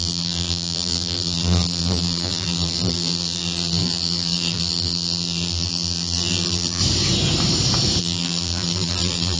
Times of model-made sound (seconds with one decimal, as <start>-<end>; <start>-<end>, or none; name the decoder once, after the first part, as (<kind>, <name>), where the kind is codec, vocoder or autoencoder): 0.0-6.8 (vocoder, BigVGAN v2); 8.0-9.4